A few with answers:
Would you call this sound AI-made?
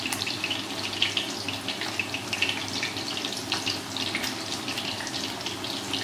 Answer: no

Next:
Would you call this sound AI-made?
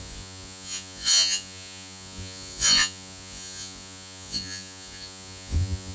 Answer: yes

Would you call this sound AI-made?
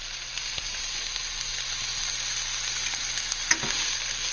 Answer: no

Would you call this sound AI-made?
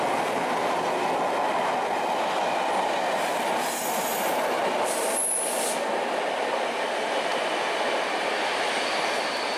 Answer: no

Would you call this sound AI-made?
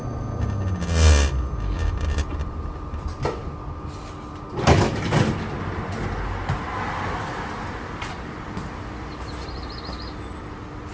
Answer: no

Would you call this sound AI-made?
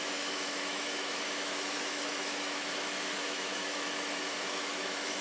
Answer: yes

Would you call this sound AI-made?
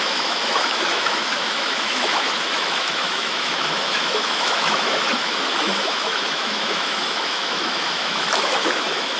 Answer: yes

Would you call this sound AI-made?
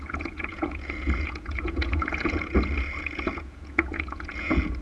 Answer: yes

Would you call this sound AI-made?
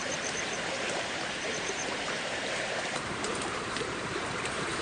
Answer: yes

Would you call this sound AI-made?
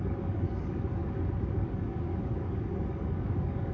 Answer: yes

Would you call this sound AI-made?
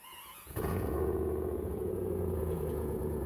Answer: yes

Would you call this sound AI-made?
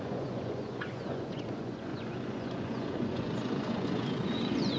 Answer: yes